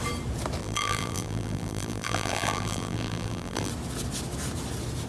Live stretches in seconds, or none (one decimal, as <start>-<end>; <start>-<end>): 0.0-0.6; 3.7-5.1